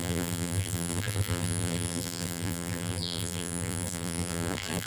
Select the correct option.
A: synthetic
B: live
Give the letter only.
A